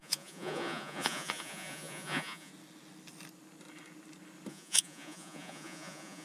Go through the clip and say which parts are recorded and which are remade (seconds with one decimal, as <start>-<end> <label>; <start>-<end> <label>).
0.0-2.5 remade; 2.5-4.5 recorded; 4.5-6.2 remade